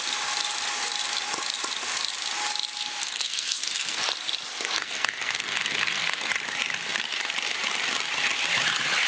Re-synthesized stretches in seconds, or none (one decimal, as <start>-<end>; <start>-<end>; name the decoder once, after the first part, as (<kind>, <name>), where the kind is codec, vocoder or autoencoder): 3.0-4.0 (codec, SNAC); 4.5-6.3

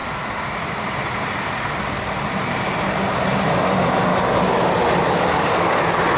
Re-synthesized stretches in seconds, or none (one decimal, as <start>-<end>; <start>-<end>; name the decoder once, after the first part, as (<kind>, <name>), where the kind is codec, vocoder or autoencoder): 4.1-5.8 (codec, DAC)

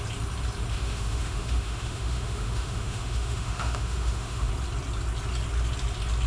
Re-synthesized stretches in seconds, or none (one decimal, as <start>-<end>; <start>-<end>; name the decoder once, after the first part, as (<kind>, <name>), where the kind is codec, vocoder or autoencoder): 0.7-4.5 (autoencoder, DAC-VAE)

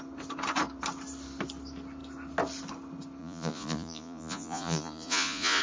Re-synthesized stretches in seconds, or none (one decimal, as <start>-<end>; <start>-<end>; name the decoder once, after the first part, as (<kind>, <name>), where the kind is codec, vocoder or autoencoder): 3.2-5.6 (vocoder, Vocos)

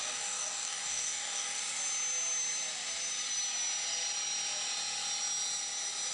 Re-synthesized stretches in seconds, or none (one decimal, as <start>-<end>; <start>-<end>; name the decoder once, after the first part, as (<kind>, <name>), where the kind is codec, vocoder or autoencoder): 0.0-1.6 (codec, DAC)

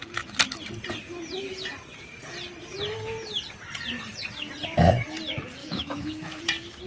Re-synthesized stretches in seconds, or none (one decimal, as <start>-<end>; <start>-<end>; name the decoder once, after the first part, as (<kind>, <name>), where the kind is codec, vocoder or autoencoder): 5.6-6.4 (autoencoder, DAC-VAE)

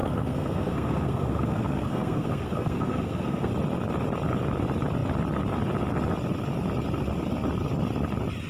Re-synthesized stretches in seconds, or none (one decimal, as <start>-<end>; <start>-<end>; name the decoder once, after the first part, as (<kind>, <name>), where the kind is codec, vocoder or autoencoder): 0.0-3.5 (codec, SNAC)

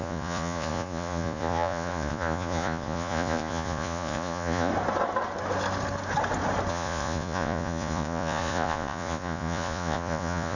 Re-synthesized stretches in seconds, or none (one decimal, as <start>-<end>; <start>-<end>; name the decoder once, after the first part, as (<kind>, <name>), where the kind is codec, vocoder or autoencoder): 0.0-4.7 (vocoder, Vocos); 6.7-10.6